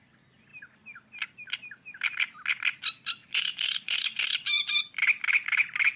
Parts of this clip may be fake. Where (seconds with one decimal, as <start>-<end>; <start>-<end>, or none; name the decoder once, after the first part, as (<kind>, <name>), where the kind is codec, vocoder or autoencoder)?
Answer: 3.2-4.7 (vocoder, BigVGAN v2)